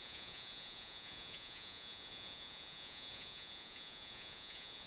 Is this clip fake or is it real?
fake